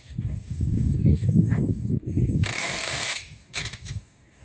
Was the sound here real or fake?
fake